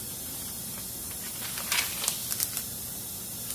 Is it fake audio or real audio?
real